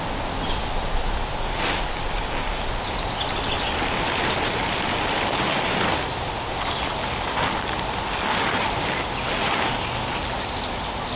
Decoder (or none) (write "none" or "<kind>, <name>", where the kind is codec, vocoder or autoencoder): none